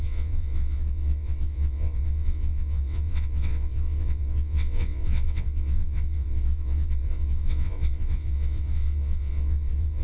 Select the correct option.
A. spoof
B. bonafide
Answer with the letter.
A